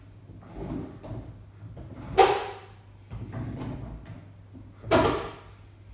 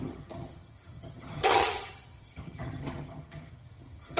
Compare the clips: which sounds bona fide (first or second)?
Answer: first